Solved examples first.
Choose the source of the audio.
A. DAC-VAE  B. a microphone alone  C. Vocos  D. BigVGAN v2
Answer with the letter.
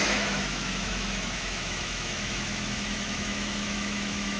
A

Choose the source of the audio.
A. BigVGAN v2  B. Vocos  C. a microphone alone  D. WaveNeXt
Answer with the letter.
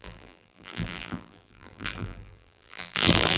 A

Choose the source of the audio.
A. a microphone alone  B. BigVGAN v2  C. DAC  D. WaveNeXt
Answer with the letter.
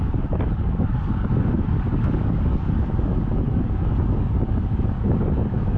C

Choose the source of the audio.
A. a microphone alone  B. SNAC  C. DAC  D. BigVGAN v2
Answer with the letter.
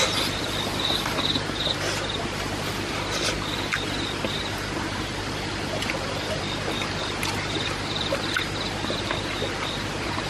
A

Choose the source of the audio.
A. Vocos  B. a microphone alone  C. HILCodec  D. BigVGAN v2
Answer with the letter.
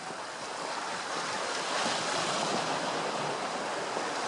B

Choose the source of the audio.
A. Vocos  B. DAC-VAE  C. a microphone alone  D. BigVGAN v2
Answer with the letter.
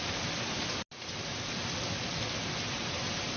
C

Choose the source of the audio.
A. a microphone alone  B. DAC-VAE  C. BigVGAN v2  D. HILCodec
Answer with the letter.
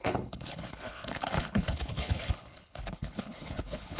D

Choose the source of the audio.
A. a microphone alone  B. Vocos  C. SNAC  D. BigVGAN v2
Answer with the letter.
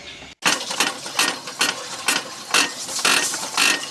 A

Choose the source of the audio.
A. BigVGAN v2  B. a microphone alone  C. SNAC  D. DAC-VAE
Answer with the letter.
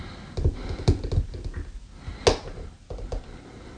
B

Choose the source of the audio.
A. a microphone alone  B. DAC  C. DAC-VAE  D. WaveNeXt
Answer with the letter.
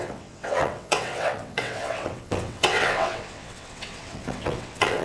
D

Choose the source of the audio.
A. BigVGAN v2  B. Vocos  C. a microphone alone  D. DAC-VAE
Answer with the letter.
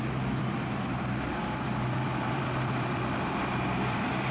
A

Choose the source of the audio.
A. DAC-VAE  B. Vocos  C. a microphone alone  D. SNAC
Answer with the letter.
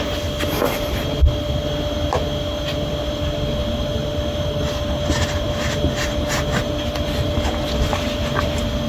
C